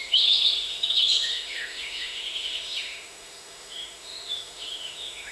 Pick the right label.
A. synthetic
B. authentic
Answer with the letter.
A